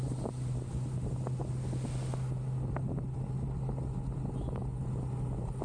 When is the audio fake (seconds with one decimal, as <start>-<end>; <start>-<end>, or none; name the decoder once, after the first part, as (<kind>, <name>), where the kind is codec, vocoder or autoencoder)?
none

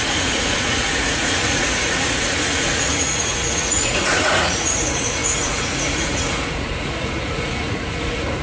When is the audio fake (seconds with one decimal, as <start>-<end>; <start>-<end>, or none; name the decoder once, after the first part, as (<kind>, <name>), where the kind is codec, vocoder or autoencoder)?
0.0-8.4 (vocoder, Vocos)

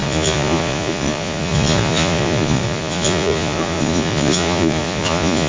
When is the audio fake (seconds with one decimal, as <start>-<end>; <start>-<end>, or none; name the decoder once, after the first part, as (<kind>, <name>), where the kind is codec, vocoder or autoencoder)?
0.0-5.5 (vocoder, Vocos)

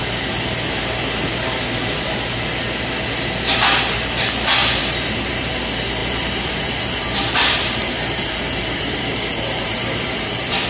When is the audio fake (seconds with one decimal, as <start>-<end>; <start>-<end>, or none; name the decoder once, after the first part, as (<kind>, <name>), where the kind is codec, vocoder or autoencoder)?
4.6-5.5 (vocoder, BigVGAN v2); 6.0-10.7